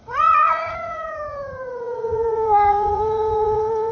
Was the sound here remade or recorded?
remade